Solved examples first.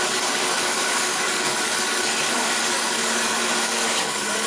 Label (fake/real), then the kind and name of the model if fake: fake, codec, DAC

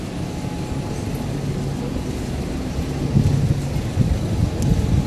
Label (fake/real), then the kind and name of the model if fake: real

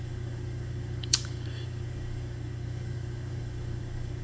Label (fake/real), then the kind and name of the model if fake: fake, codec, DAC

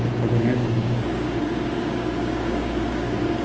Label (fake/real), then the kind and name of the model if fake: fake, codec, DAC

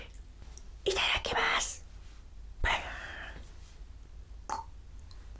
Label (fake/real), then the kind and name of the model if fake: real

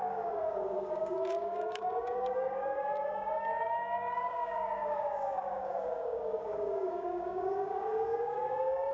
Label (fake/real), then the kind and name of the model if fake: fake, codec, DAC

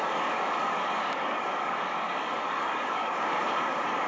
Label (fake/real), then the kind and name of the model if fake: fake, codec, DAC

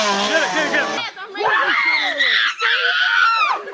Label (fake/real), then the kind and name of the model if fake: real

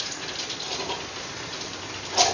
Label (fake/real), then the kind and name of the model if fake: real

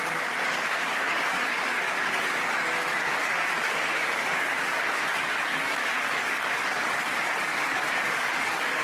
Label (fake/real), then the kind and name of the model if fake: fake, codec, DAC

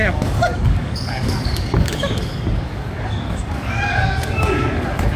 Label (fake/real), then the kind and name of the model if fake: fake, codec, DAC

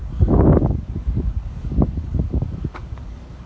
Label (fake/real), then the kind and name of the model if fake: fake, codec, DAC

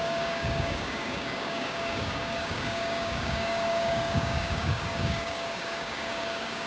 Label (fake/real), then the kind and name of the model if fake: fake, codec, DAC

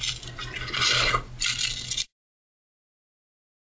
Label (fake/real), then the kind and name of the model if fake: real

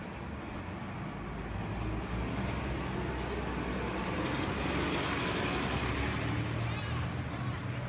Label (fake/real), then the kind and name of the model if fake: real